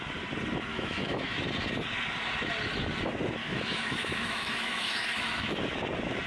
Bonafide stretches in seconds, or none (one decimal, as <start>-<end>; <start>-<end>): 0.0-0.7; 1.4-3.4; 5.5-6.3